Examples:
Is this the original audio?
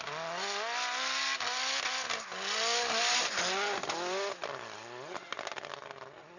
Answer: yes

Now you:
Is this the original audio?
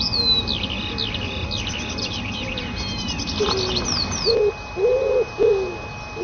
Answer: yes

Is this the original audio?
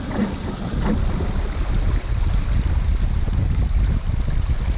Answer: yes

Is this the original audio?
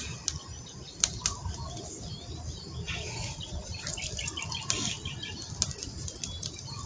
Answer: yes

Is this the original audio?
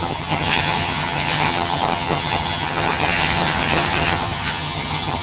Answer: no